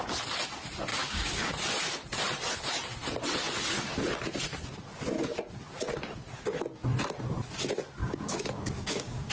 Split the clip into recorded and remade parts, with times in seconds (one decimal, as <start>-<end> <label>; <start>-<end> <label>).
0.0-0.9 recorded; 0.9-1.5 remade; 1.5-8.0 recorded; 8.0-9.3 remade